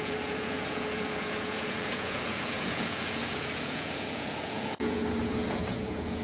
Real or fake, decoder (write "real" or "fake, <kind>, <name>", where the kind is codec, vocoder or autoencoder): fake, vocoder, Vocos